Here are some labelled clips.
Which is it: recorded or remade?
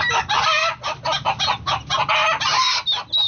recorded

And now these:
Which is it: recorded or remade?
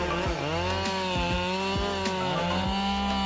recorded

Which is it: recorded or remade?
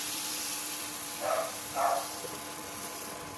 remade